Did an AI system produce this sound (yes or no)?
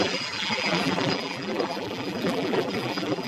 yes